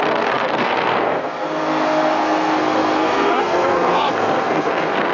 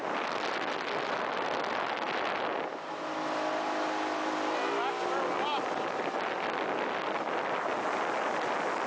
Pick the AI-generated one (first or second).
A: first